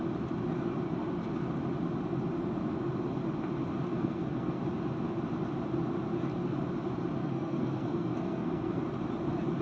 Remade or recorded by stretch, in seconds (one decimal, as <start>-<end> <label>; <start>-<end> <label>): 0.0-3.9 recorded; 3.9-4.6 remade; 4.6-7.2 recorded; 7.2-8.8 remade; 8.8-9.6 recorded